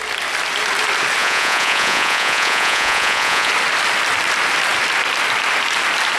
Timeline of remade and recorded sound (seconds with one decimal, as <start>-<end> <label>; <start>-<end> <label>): 0.0-1.2 recorded; 1.2-3.5 remade; 3.5-6.2 recorded